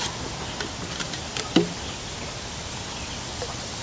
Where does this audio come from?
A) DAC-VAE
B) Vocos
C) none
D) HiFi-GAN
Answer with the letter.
C